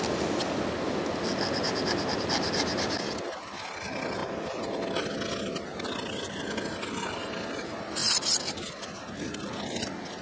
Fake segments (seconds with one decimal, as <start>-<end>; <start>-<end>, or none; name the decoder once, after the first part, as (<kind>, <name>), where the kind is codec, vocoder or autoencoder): none

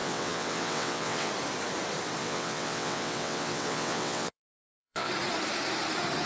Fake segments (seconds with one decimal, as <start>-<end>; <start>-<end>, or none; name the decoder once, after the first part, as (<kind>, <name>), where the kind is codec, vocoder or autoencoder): 0.0-1.3 (vocoder, WaveNeXt); 2.2-5.1

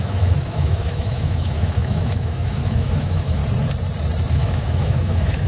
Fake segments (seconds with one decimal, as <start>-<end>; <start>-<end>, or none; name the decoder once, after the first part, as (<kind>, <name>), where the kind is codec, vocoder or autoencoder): 0.0-3.4 (autoencoder, DAC-VAE); 4.3-5.5

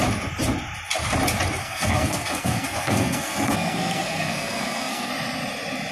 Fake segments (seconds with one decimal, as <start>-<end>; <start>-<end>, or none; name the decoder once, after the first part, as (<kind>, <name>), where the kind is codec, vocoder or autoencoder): 1.6-5.1 (codec, SNAC)

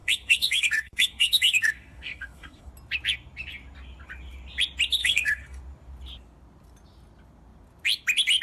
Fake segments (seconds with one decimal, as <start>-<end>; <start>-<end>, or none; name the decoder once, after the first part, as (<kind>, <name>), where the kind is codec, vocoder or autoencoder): 0.0-2.7 (codec, SNAC); 5.0-5.6